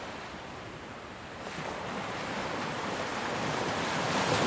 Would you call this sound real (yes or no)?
yes